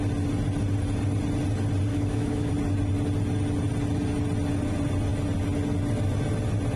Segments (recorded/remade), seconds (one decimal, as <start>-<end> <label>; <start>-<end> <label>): 0.0-1.9 recorded; 1.9-2.5 remade; 2.5-6.8 recorded

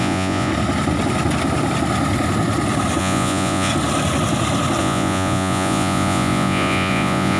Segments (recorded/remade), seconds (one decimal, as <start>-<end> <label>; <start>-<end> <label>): 0.0-0.5 remade; 0.5-3.0 recorded; 3.0-3.7 remade; 3.7-4.8 recorded; 4.8-7.4 remade

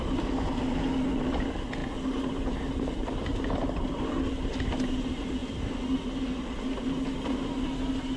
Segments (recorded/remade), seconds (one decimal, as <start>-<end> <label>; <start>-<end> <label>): 0.0-8.2 recorded